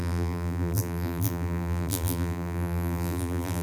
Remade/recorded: remade